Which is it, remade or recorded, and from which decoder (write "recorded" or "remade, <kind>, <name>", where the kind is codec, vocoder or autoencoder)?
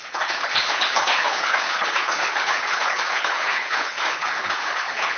remade, codec, HILCodec